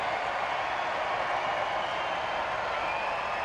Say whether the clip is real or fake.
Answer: real